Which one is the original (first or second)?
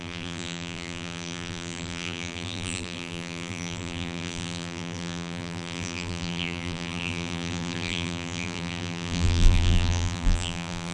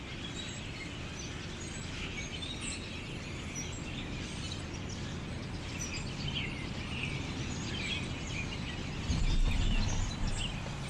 second